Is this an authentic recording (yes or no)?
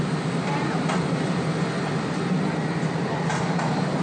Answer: yes